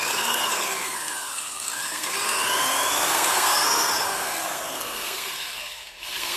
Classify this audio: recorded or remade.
remade